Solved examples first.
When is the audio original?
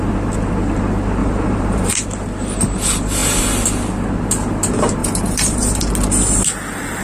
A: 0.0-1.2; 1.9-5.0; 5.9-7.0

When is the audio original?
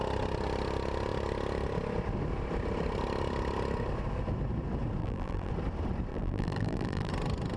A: 0.0-5.0; 5.5-6.1; 7.1-7.6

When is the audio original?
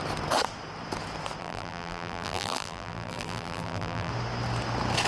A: 0.0-1.4; 4.1-5.1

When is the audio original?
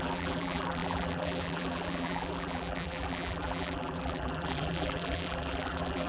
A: none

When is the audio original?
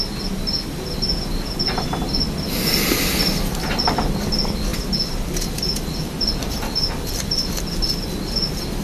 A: 0.0-4.7; 7.6-8.8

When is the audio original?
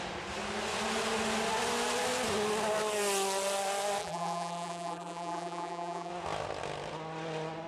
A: 0.0-4.0; 6.1-7.7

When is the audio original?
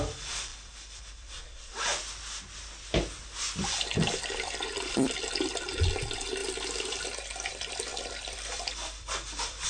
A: 1.9-3.7; 6.4-7.2